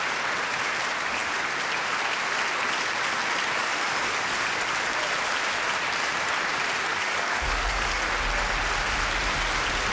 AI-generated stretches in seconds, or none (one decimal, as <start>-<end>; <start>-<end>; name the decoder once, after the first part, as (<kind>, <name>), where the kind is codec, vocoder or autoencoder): 3.6-4.3 (codec, DAC); 6.9-8.0